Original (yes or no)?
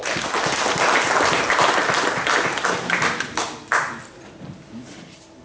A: yes